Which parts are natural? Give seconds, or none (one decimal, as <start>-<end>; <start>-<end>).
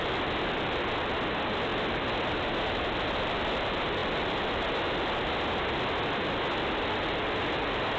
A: 0.0-8.0